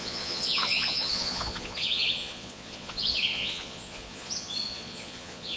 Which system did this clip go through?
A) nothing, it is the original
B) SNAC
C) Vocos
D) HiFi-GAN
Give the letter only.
C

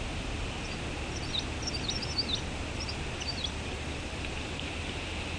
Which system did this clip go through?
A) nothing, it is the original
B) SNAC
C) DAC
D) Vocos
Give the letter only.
A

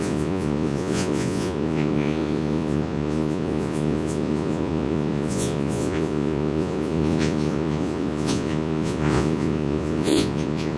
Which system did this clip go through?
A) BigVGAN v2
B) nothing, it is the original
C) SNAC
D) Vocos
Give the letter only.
D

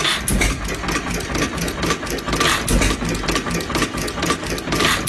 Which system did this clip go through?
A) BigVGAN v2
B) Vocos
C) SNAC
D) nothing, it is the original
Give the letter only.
D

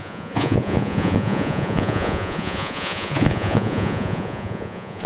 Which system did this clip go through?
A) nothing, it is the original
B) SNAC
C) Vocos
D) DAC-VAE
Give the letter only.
C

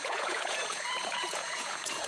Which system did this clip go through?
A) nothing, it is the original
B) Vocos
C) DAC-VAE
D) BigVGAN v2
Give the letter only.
B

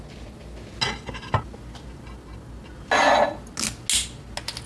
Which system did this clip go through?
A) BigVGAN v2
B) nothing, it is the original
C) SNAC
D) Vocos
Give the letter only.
B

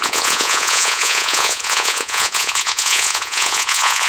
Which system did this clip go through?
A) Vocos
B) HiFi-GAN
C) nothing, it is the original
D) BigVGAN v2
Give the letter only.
A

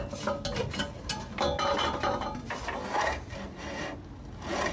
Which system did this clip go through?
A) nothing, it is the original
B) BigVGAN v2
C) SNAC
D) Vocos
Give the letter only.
A